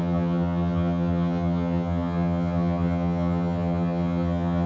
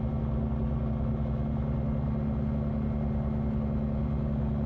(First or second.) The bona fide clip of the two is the second